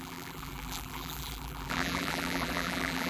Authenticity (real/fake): fake